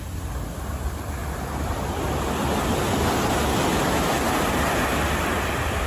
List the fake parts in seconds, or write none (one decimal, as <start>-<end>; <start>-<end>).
none